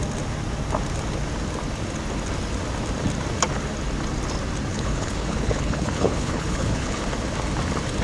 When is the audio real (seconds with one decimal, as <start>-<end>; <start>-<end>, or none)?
0.0-4.7; 7.0-8.0